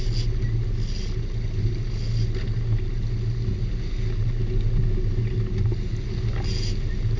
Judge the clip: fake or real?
real